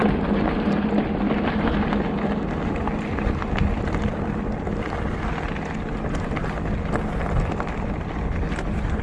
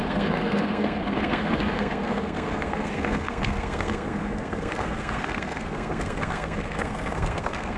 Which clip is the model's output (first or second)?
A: second